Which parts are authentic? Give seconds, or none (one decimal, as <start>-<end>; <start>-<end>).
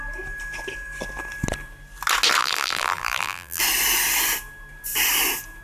0.0-2.4; 3.6-5.6